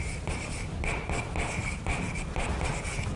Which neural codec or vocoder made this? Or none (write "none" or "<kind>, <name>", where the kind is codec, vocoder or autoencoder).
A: none